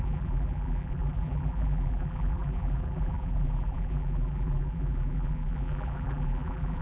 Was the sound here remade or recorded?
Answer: remade